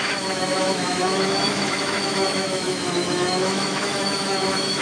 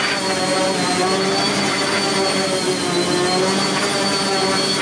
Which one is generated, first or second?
first